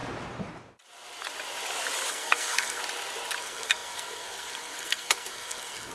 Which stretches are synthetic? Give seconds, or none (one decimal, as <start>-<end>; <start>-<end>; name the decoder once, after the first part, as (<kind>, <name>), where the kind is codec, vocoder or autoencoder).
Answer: 2.1-2.8 (codec, SNAC); 3.4-5.9